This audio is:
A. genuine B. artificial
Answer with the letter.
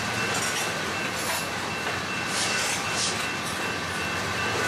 A